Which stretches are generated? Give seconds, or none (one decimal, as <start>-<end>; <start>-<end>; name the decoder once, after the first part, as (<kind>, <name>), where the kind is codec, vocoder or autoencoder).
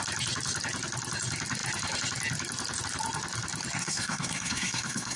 3.8-5.2 (codec, SNAC)